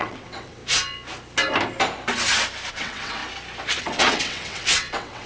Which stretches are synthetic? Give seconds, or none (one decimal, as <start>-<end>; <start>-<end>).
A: 0.0-0.6; 2.7-3.2; 3.8-5.3